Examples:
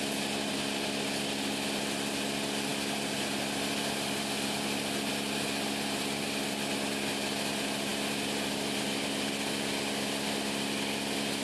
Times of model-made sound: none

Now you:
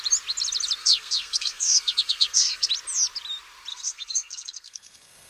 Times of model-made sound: 0.8-2.7 (codec, SNAC); 3.7-5.3

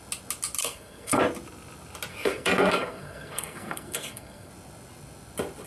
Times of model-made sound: 0.6-1.2 (codec, SNAC); 2.1-4.5